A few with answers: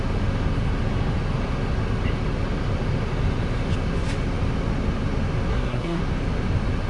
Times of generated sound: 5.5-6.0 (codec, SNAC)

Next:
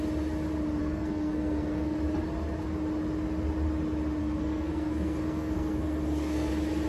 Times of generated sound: 0.8-2.0 (codec, SNAC); 4.2-6.5

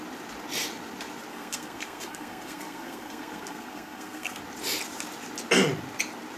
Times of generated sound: 1.3-4.4 (codec, SNAC)

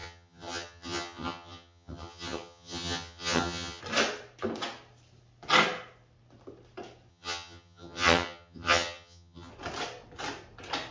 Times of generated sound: 0.0-3.8 (vocoder, HiFi-GAN); 7.1-9.5

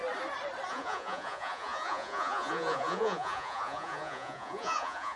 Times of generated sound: 0.7-5.2 (vocoder, Vocos)